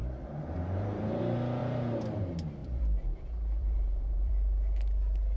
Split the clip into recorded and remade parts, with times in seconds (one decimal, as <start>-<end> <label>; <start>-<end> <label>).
0.0-1.2 remade; 1.2-1.6 recorded; 1.6-2.2 remade; 2.2-2.6 recorded; 2.6-3.2 remade; 3.2-3.6 recorded; 3.6-4.3 remade; 4.3-5.4 recorded